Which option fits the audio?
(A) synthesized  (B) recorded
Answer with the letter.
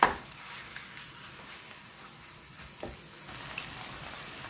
B